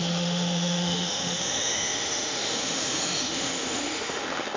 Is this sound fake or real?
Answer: fake